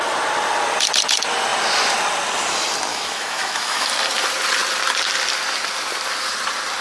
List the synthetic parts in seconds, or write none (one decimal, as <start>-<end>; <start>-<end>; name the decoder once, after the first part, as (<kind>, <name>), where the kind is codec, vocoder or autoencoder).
2.9-3.9 (autoencoder, DAC-VAE)